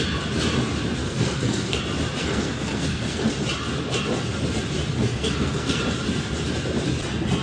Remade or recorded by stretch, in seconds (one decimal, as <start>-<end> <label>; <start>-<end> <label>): 0.0-1.0 recorded; 1.0-1.8 remade; 1.8-2.2 recorded; 2.2-3.3 remade; 3.3-5.0 recorded; 5.0-5.8 remade; 5.8-7.4 recorded